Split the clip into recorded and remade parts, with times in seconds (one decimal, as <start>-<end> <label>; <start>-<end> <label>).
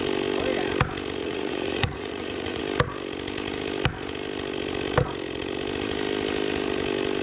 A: 0.0-1.2 recorded; 1.2-2.6 remade; 2.6-7.2 recorded